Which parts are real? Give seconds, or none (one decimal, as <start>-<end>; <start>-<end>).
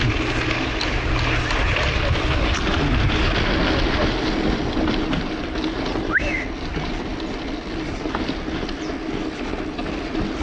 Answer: 0.0-10.4